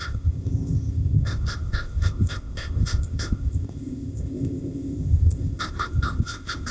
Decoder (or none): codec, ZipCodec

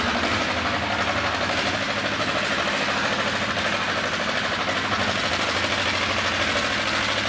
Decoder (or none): none